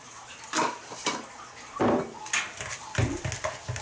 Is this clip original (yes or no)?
yes